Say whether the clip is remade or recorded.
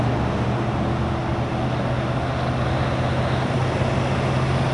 recorded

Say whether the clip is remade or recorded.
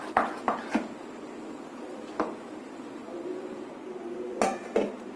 recorded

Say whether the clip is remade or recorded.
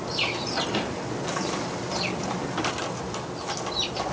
recorded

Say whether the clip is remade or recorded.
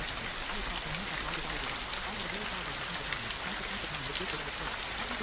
recorded